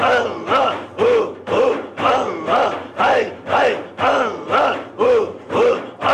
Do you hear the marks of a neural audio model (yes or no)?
no